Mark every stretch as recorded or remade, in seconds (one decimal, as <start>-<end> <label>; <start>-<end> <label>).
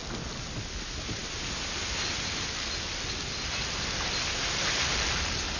0.0-5.6 recorded